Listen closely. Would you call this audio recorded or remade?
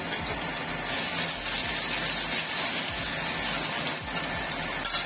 recorded